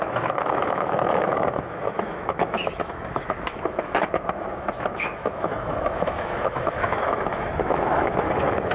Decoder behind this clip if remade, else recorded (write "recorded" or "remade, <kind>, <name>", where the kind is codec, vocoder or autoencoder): remade, autoencoder, DAC-VAE